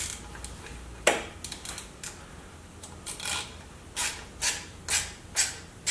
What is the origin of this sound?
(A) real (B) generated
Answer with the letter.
A